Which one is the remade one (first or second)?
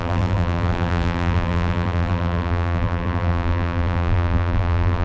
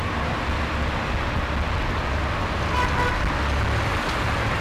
first